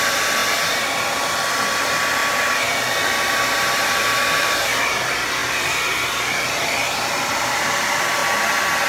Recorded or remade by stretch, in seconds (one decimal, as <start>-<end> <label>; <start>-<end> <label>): 0.0-0.4 remade; 0.4-1.0 recorded; 1.0-2.2 remade; 2.2-3.2 recorded; 3.2-5.4 remade; 5.4-6.6 recorded; 6.6-8.2 remade; 8.2-8.9 recorded